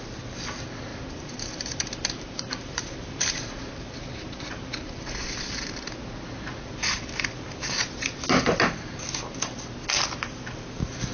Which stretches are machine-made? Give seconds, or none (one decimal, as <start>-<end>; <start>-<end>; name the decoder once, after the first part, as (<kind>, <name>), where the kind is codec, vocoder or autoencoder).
0.9-5.5 (vocoder, BigVGAN v2)